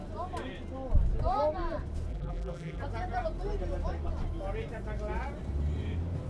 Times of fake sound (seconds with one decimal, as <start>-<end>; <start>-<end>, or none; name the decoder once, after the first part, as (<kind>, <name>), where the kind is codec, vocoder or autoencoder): 2.1-2.8 (vocoder, BigVGAN v2)